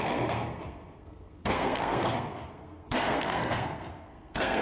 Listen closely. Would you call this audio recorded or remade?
remade